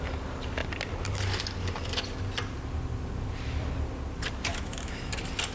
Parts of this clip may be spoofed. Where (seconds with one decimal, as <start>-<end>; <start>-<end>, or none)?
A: 4.5-5.1

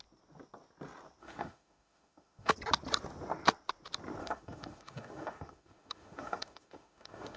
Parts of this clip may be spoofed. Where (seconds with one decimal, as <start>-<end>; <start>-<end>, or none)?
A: 1.2-2.5; 4.2-7.4